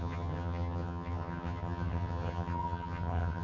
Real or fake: fake